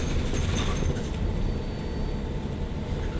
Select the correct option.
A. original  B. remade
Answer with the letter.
A